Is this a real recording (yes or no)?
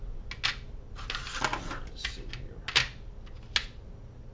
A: yes